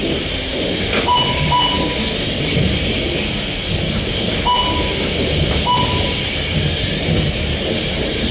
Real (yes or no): yes